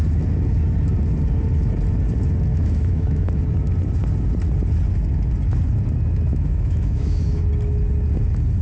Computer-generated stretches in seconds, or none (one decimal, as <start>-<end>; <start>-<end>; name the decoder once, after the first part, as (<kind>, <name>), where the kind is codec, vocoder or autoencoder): 2.5-3.4 (autoencoder, DAC-VAE); 6.3-7.4